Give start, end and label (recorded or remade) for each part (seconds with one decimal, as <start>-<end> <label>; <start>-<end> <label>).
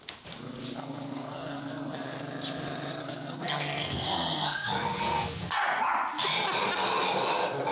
0.0-0.8 recorded; 0.8-2.2 remade; 2.2-3.0 recorded; 3.0-5.7 remade; 5.7-7.7 recorded